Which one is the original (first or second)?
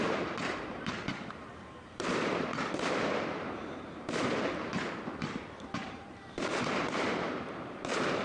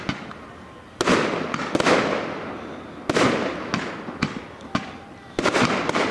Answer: second